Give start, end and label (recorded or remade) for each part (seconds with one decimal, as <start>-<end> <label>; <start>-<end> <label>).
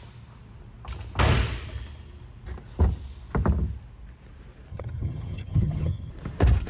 0.0-4.7 recorded; 4.7-6.1 remade; 6.1-6.7 recorded